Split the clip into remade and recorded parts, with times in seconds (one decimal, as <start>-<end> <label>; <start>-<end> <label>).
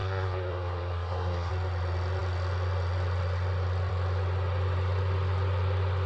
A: 0.0-1.5 remade; 1.5-6.1 recorded